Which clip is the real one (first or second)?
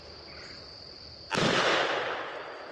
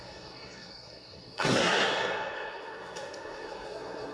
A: first